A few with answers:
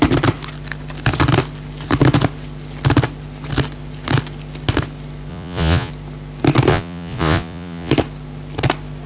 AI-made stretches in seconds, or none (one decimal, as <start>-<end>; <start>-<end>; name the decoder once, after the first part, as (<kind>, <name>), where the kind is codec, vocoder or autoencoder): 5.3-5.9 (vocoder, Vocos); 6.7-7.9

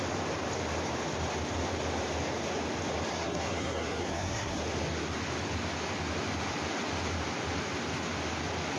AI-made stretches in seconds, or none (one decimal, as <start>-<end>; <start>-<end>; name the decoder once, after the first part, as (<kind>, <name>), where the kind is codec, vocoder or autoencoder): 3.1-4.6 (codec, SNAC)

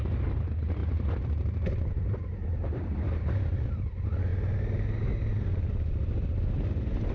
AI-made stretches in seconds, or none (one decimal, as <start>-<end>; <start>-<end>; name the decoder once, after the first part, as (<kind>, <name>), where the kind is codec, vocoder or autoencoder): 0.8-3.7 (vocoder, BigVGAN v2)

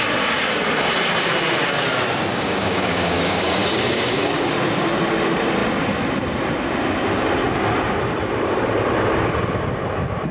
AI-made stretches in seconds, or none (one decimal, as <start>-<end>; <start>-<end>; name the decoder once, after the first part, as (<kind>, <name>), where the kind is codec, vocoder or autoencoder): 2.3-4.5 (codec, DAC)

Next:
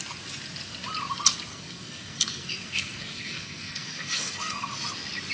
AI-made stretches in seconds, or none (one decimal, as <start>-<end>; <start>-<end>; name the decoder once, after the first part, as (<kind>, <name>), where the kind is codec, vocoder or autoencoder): 1.5-4.7 (codec, SNAC)